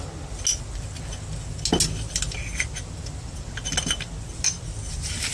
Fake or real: real